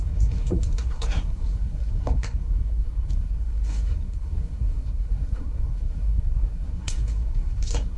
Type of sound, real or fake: fake